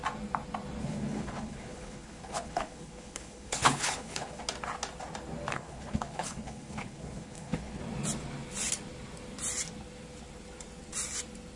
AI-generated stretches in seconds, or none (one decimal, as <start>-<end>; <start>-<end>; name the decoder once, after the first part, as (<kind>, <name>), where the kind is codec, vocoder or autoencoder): 0.8-4.4 (codec, HILCodec); 5.5-7.8